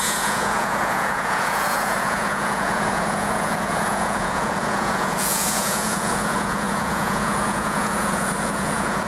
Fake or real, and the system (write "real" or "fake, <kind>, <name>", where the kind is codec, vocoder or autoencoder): fake, vocoder, Vocos